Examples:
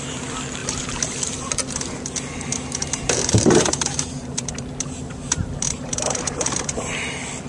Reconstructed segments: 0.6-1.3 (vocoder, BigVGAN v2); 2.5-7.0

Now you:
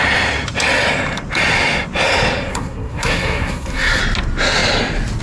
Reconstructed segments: 2.5-4.0 (codec, SNAC)

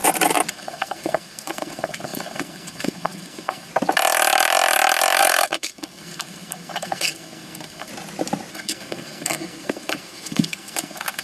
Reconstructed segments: 0.5-3.7 (codec, SNAC); 5.2-7.9; 8.5-11.2